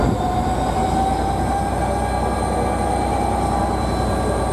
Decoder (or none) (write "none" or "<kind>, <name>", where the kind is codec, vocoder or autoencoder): none